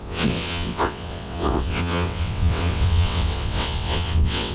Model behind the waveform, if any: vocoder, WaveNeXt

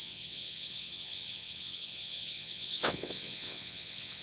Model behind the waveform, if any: vocoder, WaveNeXt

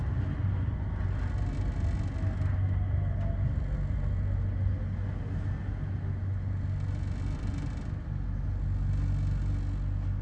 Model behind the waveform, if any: none